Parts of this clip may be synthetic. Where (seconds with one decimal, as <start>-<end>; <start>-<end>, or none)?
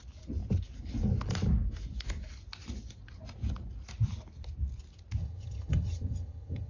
5.2-6.7